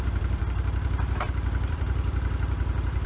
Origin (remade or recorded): remade